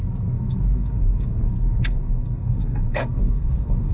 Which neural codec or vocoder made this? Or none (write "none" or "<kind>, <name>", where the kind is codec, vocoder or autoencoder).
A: codec, SNAC